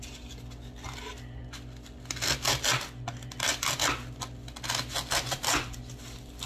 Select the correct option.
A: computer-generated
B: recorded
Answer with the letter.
B